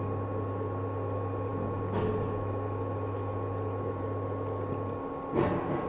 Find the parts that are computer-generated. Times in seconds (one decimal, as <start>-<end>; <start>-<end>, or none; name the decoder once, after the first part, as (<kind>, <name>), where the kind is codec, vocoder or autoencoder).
none